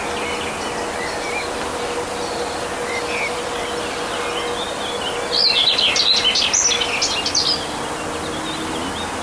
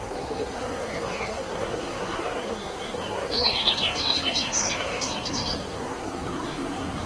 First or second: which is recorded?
first